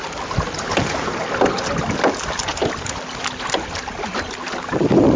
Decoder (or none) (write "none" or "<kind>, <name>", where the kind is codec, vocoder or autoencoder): none